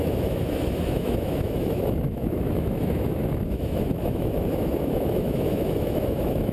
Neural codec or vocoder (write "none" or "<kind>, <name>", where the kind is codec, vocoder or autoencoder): autoencoder, DAC-VAE